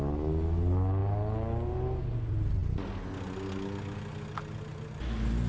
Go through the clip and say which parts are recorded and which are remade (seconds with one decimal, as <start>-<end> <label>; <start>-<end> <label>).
0.0-5.5 recorded